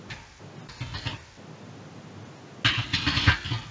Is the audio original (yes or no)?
yes